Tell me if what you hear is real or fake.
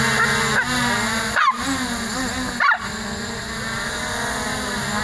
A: real